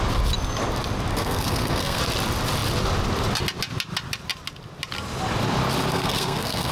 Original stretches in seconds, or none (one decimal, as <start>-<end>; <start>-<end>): 0.0-1.1; 2.0-5.9